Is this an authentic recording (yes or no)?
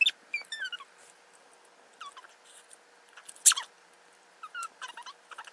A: yes